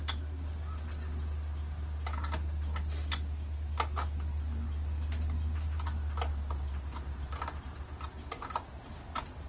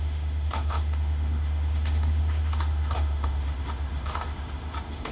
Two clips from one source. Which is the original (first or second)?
first